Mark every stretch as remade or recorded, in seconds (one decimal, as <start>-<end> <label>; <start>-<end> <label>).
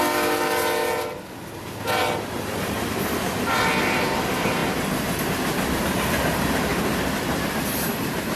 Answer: 0.0-8.4 recorded